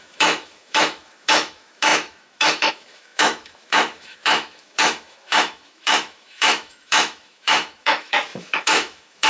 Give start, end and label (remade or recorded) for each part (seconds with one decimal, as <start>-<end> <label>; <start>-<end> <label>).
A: 0.0-9.3 remade